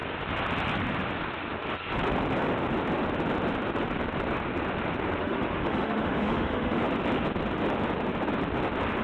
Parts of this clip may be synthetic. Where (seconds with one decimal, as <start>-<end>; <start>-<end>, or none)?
5.2-6.8